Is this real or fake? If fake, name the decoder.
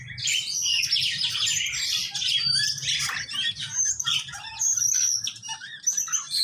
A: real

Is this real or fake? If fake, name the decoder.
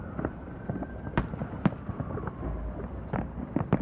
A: fake, vocoder, BigVGAN v2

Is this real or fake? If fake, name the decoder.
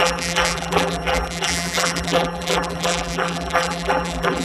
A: fake, vocoder, BigVGAN v2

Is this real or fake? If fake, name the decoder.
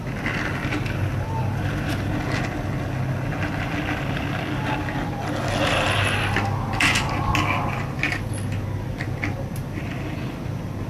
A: real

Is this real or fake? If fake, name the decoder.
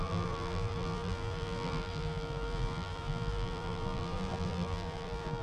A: fake, vocoder, BigVGAN v2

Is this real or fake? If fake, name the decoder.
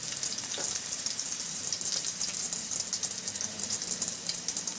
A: fake, vocoder, BigVGAN v2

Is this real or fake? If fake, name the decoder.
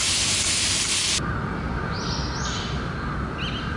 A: real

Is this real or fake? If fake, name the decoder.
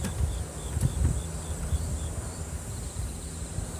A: fake, vocoder, BigVGAN v2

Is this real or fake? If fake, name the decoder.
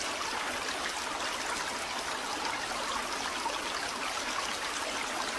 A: real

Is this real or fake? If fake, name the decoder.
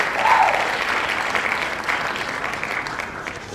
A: real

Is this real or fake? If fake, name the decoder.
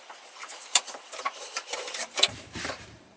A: fake, vocoder, BigVGAN v2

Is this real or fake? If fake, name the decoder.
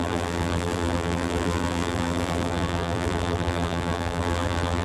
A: fake, vocoder, BigVGAN v2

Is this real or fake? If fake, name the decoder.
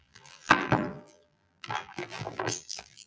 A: fake, vocoder, BigVGAN v2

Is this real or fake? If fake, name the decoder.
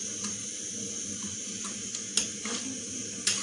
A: real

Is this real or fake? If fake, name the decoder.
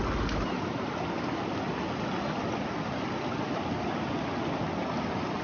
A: real